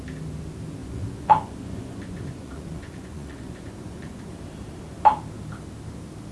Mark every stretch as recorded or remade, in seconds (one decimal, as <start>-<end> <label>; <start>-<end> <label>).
0.0-0.8 recorded; 0.8-4.2 remade; 4.2-6.3 recorded